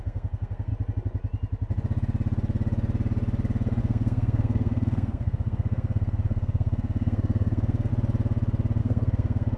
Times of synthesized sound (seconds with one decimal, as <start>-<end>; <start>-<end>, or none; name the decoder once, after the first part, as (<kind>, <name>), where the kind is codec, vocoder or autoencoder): 0.0-0.7 (codec, SNAC); 3.8-7.9; 8.8-9.6